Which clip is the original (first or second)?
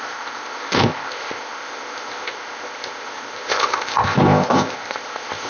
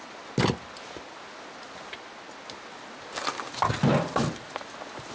second